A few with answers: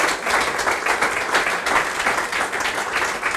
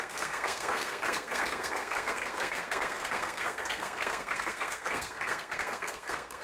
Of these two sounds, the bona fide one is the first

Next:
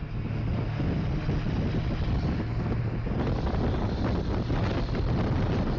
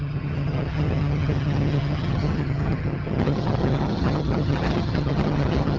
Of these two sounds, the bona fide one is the first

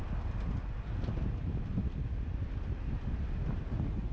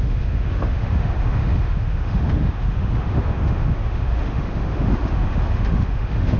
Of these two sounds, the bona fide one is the first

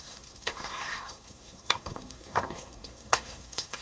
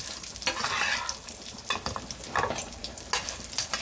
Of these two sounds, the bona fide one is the second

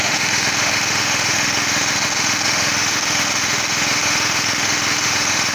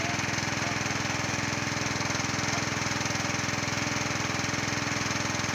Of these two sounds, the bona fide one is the second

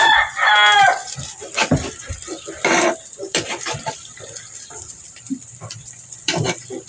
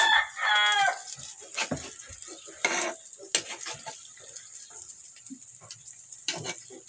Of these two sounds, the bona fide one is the second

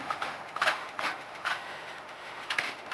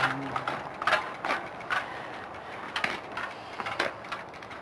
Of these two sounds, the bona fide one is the second